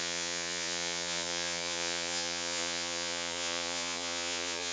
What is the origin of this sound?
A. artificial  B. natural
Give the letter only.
A